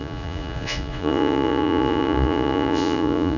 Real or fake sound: fake